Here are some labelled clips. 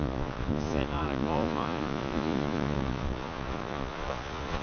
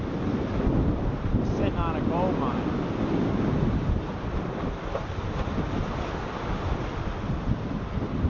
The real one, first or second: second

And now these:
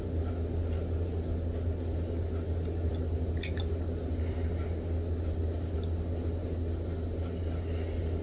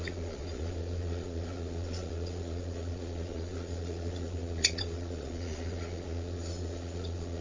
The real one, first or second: first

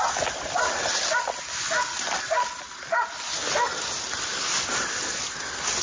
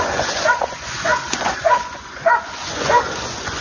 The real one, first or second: first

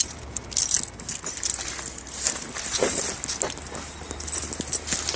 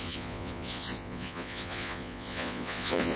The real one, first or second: first